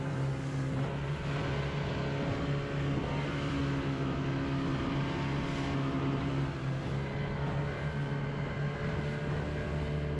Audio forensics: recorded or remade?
recorded